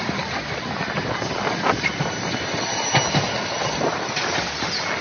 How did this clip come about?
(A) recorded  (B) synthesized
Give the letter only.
A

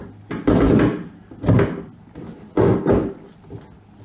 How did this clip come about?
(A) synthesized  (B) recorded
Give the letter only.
B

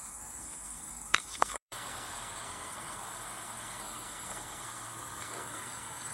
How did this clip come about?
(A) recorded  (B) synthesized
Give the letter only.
B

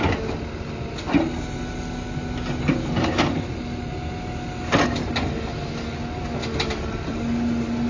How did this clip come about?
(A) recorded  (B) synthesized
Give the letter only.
A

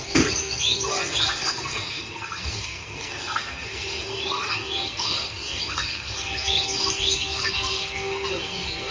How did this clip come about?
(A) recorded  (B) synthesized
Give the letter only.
B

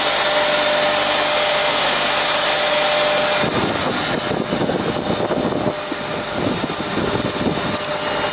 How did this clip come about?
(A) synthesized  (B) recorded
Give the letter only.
B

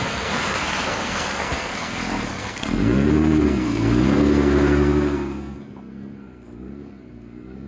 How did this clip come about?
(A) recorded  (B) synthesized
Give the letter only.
B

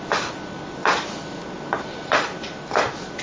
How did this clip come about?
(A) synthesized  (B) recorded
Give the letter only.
B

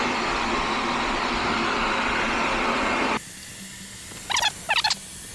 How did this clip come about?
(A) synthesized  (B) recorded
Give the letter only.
B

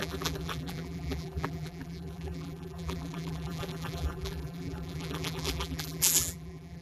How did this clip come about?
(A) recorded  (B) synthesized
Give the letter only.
B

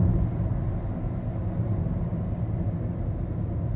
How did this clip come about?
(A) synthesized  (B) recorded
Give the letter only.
B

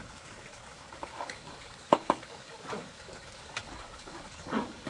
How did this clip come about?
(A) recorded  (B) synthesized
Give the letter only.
B